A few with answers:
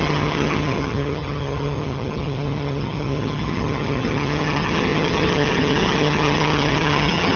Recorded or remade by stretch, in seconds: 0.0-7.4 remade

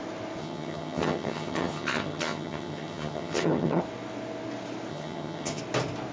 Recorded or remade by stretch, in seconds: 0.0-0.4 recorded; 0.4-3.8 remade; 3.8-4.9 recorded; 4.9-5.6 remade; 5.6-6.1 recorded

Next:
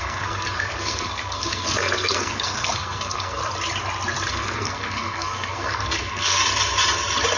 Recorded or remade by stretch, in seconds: 0.0-3.4 remade; 3.4-4.3 recorded; 4.3-6.4 remade; 6.4-7.4 recorded

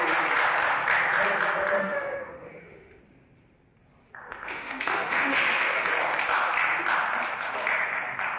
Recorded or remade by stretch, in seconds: 0.0-1.8 recorded; 1.8-3.0 remade; 3.0-4.3 recorded; 4.3-5.9 remade; 5.9-8.4 recorded

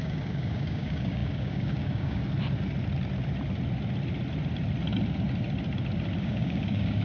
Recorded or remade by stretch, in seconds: 0.0-2.2 remade; 2.2-6.2 recorded; 6.2-7.0 remade